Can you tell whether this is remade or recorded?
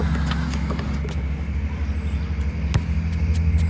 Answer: recorded